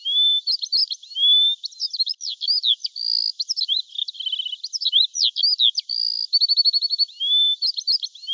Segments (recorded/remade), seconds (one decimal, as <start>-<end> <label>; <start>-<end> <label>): 0.0-8.3 recorded